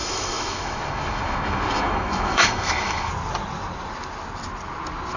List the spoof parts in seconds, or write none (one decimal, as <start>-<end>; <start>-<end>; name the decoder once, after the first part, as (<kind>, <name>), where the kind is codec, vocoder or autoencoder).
0.0-3.1 (autoencoder, DAC-VAE)